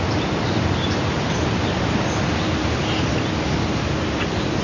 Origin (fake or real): real